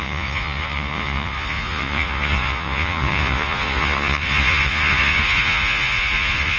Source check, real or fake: fake